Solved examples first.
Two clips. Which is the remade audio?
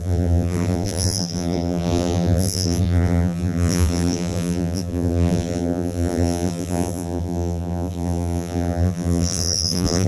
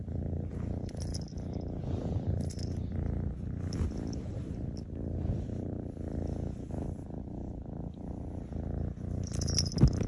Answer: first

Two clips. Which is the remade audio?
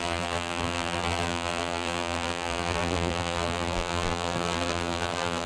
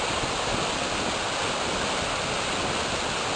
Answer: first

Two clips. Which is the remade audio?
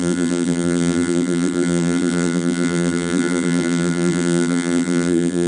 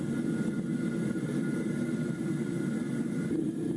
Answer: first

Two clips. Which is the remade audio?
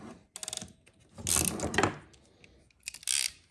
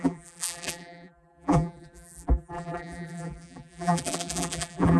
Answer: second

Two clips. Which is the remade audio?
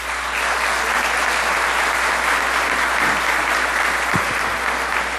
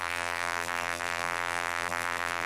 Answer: second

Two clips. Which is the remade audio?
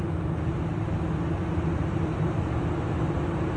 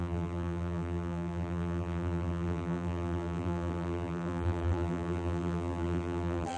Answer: second